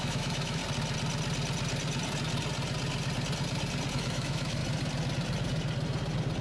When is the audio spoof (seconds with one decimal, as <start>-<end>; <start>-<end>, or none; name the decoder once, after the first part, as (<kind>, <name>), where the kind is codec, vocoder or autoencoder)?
0.0-0.6 (autoencoder, DAC-VAE); 3.9-4.6